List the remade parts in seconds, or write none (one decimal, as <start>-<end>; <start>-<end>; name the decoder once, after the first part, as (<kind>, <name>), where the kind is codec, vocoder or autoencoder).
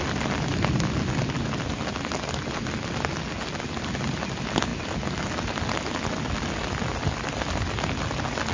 none